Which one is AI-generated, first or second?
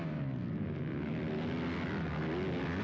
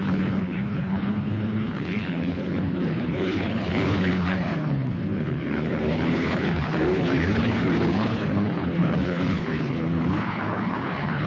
second